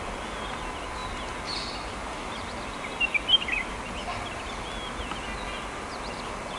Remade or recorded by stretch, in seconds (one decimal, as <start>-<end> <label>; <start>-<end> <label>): 0.0-6.6 recorded